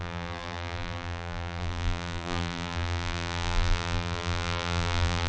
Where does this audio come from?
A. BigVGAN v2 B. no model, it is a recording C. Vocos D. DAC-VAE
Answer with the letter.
A